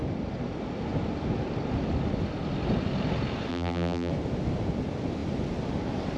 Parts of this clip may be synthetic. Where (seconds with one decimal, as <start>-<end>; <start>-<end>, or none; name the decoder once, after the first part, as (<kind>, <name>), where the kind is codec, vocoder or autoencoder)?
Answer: 3.5-4.1 (vocoder, BigVGAN v2)